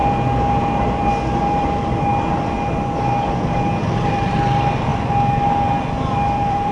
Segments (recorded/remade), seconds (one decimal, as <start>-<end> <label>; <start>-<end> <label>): 0.0-1.4 recorded; 1.4-2.1 remade; 2.1-4.0 recorded; 4.0-4.9 remade; 4.9-5.8 recorded; 5.8-6.7 remade